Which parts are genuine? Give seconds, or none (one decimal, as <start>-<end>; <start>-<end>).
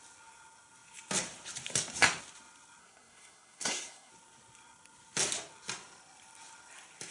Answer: 0.0-2.8; 4.1-7.1